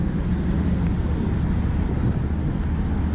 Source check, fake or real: real